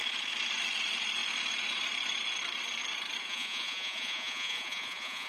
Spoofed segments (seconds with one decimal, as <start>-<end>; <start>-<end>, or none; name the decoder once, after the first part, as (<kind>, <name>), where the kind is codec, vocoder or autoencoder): 3.2-5.3 (vocoder, Vocos)